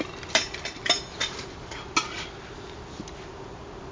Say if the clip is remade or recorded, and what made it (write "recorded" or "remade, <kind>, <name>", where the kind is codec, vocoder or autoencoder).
recorded